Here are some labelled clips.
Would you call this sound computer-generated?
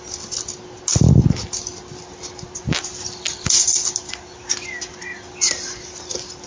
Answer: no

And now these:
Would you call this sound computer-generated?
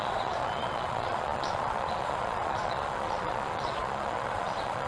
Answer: yes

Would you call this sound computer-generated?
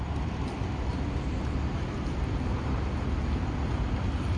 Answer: no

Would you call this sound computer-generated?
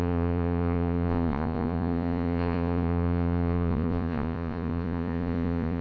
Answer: yes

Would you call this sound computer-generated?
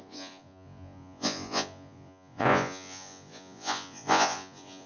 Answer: yes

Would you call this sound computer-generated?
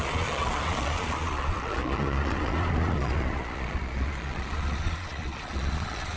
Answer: yes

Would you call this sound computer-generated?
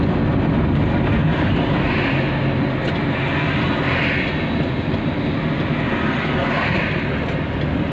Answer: no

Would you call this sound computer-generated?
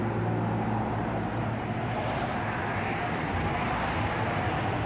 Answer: no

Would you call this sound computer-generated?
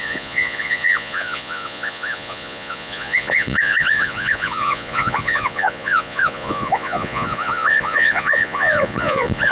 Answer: yes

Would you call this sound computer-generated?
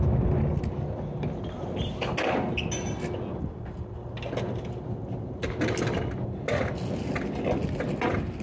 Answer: no